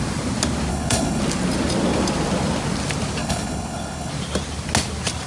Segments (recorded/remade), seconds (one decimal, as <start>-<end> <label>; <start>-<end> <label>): 0.0-0.7 recorded; 0.7-1.2 remade; 1.2-3.2 recorded; 3.2-4.1 remade; 4.1-5.3 recorded